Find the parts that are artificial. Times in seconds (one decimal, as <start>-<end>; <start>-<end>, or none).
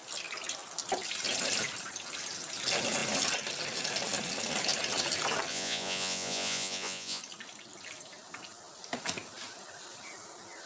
5.5-7.2